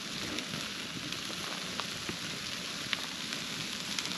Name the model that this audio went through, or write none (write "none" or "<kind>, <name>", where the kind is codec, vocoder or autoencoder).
none